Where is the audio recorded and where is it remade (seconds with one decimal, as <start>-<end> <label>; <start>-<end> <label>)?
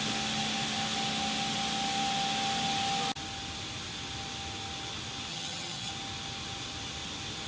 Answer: 0.0-5.3 recorded; 5.3-5.9 remade; 5.9-7.5 recorded